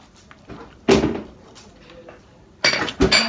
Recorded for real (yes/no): yes